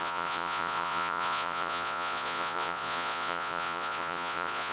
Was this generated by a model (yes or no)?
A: yes